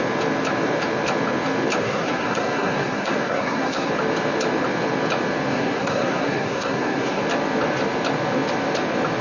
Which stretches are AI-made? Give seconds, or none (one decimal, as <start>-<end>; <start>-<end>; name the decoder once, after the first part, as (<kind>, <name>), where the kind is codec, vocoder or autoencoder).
1.8-3.9 (codec, SNAC); 5.5-7.2

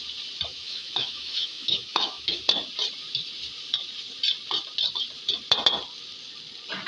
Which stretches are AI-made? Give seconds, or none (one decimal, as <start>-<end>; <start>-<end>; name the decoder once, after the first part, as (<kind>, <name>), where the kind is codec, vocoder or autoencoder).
0.5-2.4 (autoencoder, DAC-VAE)

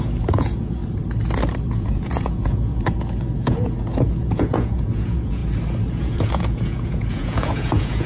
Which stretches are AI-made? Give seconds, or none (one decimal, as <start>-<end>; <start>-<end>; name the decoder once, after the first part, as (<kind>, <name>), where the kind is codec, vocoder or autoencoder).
0.0-0.8 (vocoder, Vocos); 1.7-5.4; 5.9-8.1

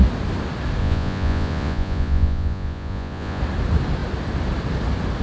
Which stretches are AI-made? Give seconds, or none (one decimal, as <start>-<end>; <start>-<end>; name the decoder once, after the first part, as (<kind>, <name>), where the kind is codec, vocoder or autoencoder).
0.8-3.4 (vocoder, Vocos)

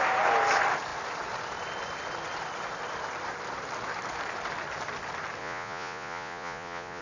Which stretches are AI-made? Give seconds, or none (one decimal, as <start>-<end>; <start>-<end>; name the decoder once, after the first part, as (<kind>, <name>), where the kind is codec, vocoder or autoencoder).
5.4-7.0 (vocoder, Vocos)